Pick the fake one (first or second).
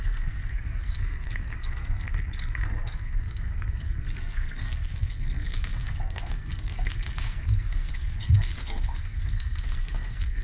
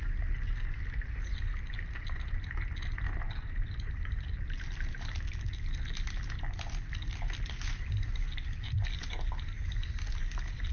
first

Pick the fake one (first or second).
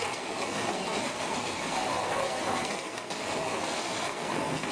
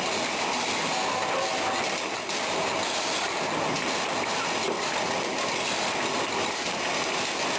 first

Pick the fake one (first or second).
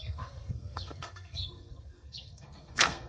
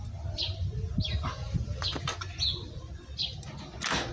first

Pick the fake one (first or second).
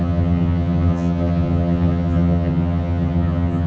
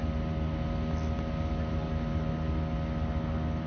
first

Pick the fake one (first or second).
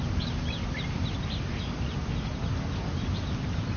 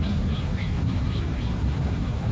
second